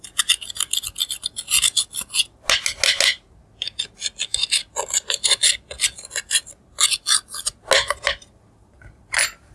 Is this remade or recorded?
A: recorded